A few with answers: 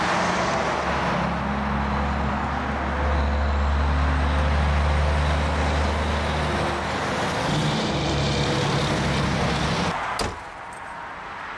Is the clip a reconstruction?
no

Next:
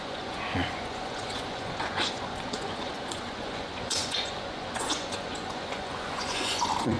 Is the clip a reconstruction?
yes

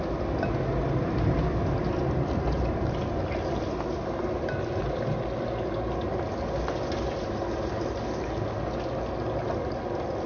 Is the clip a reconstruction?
no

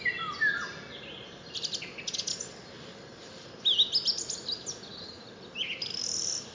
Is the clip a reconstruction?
no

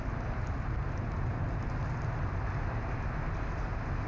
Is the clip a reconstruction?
no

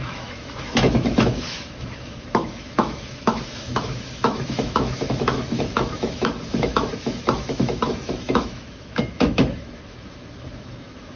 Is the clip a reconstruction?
yes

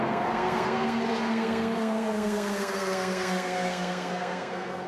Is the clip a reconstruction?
yes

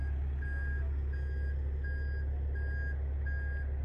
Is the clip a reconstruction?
no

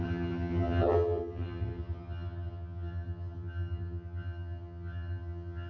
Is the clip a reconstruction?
yes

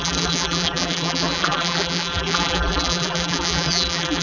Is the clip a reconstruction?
yes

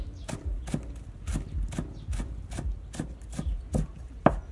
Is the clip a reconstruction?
no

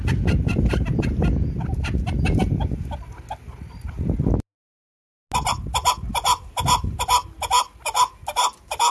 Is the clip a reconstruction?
no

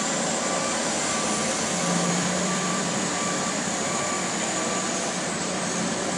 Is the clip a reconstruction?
yes